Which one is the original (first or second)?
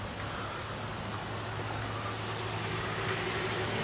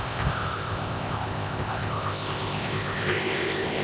first